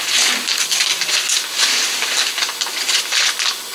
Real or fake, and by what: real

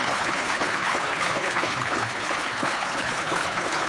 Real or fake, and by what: fake, codec, HILCodec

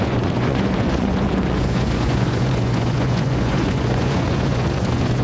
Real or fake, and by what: fake, vocoder, Vocos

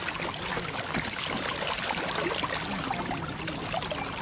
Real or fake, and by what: real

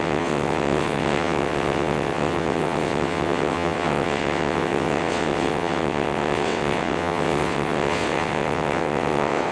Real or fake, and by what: fake, vocoder, WaveNeXt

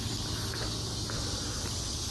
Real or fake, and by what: real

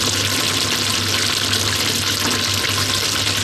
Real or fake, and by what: real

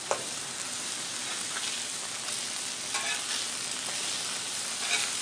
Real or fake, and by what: real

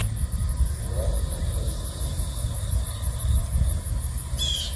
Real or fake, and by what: fake, vocoder, BigVGAN v2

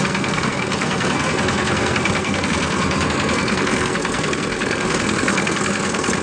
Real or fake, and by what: fake, codec, SNAC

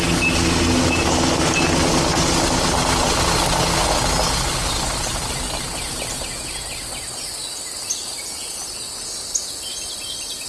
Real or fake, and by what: real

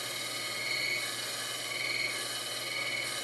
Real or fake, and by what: real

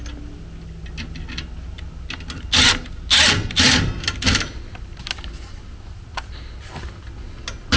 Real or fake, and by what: real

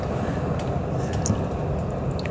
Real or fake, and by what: real